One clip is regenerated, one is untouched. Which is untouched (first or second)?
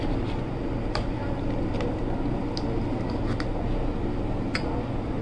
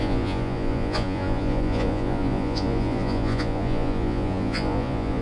first